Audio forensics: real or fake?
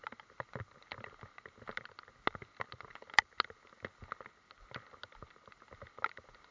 real